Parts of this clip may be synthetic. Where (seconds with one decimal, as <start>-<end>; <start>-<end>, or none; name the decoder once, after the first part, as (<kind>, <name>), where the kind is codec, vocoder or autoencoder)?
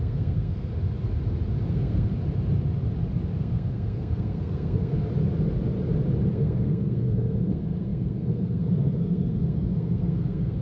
0.0-0.7 (codec, SNAC); 1.7-2.1; 3.4-4.9; 6.3-10.6